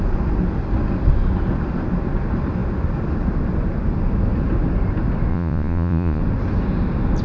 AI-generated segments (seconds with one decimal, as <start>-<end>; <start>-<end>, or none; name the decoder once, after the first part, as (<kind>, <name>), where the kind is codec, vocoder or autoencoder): 5.3-6.2 (vocoder, Vocos)